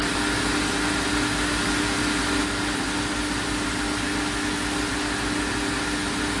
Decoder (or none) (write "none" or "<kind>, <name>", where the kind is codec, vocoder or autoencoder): none